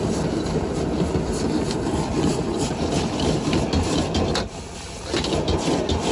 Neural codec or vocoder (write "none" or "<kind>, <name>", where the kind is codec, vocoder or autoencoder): none